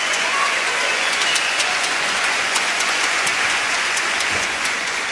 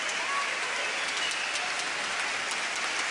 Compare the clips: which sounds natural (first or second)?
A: second